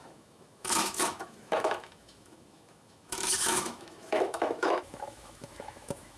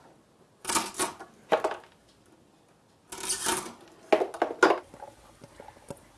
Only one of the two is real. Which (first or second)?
second